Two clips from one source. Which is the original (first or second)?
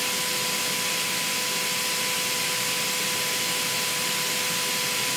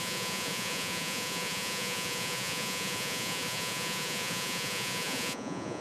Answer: first